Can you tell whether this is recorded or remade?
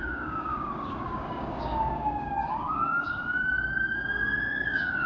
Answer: remade